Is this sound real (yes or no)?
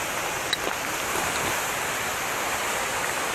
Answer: yes